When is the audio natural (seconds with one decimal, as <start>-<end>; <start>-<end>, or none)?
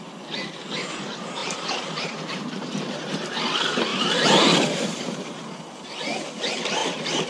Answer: 0.0-1.4; 3.4-3.9; 6.2-7.3